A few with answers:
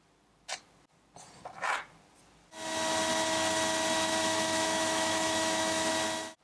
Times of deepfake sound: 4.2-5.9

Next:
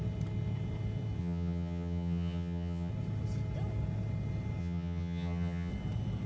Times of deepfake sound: 1.2-2.9; 4.6-5.7

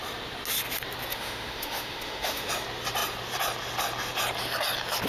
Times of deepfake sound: 1.1-2.5